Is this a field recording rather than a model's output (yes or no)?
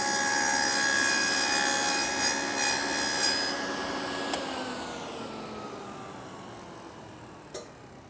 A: yes